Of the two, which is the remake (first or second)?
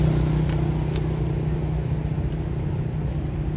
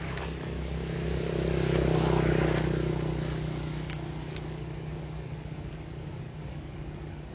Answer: second